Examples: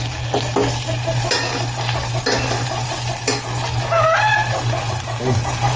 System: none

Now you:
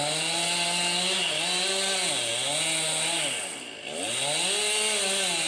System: none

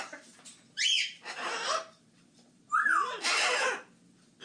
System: vocoder, BigVGAN v2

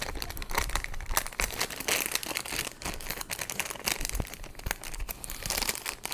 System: none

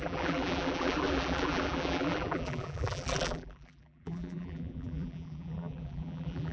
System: vocoder, BigVGAN v2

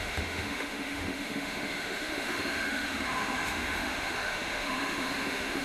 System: autoencoder, DAC-VAE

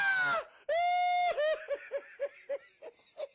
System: none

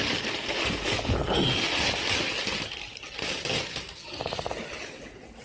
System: none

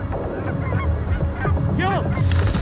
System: none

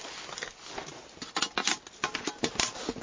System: none